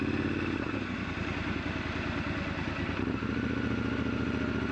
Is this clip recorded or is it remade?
recorded